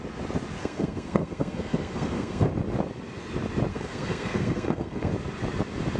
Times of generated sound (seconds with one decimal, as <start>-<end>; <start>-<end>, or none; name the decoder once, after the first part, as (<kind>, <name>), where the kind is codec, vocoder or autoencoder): 0.6-2.5 (codec, SNAC); 3.7-5.1